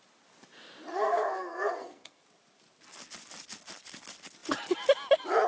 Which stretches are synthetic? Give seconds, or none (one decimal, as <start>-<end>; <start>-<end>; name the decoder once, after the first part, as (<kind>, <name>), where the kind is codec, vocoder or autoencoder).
0.9-2.2 (codec, SNAC)